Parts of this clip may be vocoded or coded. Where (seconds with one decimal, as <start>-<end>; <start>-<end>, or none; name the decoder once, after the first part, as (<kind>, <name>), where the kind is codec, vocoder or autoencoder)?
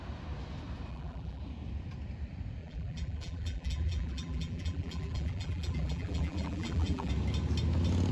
0.9-1.4 (vocoder, BigVGAN v2); 2.6-7.1